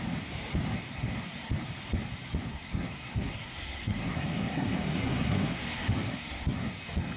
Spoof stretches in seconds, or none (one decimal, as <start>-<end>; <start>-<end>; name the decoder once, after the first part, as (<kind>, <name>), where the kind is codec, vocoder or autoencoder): 0.9-1.5 (codec, SNAC); 2.5-6.8